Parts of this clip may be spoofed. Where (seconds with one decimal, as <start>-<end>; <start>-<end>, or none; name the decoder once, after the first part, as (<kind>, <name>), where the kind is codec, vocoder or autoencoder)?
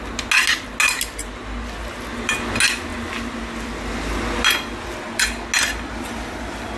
none